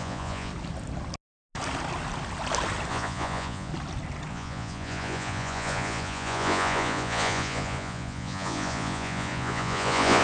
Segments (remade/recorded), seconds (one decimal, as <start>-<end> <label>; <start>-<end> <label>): 0.0-0.5 remade; 0.5-2.9 recorded; 2.9-3.7 remade; 3.7-4.3 recorded; 4.3-10.2 remade